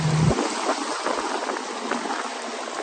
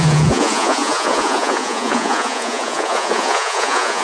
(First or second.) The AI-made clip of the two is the second